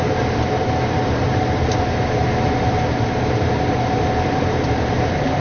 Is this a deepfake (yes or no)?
yes